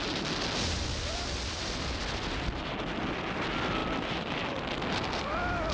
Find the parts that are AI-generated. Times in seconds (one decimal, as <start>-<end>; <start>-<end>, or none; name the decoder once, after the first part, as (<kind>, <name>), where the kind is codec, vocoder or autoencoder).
none